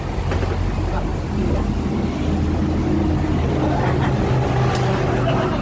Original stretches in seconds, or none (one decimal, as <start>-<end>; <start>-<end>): 0.0-5.6